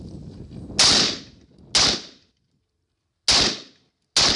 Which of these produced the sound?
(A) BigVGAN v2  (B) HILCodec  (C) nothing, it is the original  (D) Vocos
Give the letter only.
C